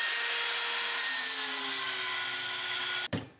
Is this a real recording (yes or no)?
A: yes